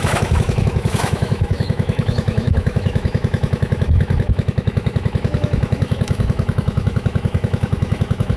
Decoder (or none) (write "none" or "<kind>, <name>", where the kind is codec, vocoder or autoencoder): autoencoder, DAC-VAE